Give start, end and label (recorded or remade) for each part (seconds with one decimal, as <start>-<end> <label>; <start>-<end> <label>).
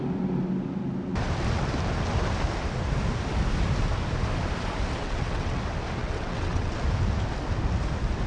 0.0-5.0 recorded; 5.0-5.6 remade; 5.6-6.0 recorded; 6.0-6.7 remade; 6.7-8.3 recorded